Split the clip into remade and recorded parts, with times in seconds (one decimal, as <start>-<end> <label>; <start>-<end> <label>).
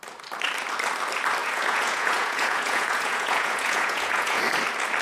0.0-1.4 recorded; 1.4-4.4 remade; 4.4-5.0 recorded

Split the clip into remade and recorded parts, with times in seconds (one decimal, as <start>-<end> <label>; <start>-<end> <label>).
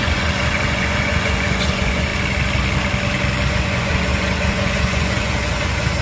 0.0-2.1 remade; 2.1-3.5 recorded; 3.5-6.0 remade